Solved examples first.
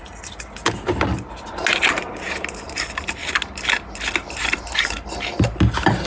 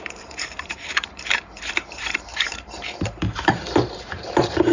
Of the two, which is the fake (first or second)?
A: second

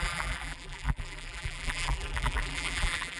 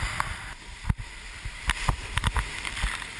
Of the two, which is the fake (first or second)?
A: first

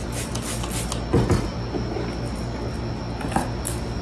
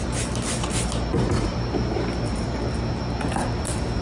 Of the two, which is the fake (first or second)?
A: second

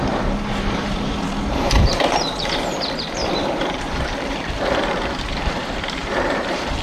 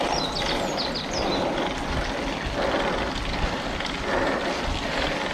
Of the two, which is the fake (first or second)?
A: first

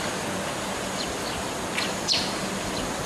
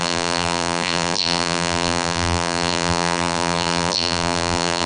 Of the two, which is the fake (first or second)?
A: second